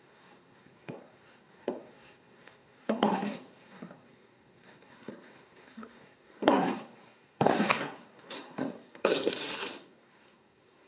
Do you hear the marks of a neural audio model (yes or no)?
yes